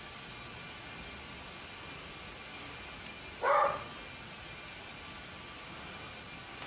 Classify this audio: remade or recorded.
recorded